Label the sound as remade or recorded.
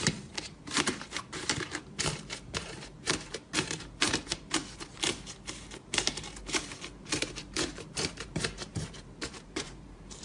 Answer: remade